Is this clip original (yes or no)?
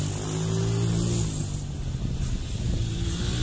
yes